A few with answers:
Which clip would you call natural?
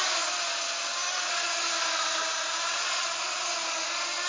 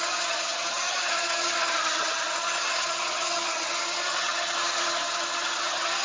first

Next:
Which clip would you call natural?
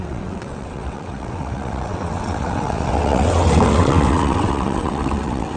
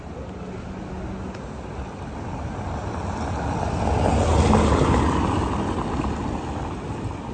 second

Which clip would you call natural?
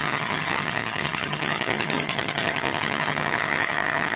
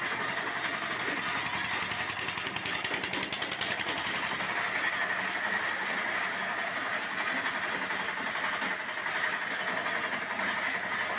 second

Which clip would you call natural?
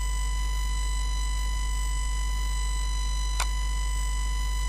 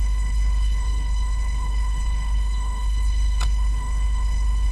first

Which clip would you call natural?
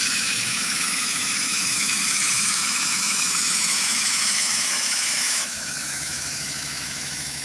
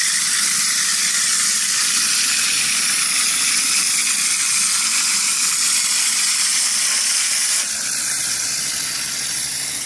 second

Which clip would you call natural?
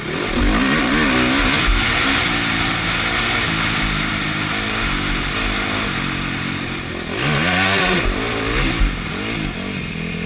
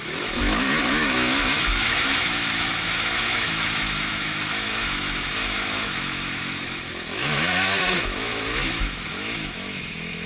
first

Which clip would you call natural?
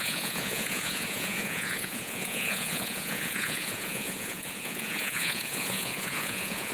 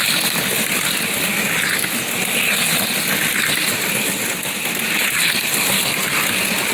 second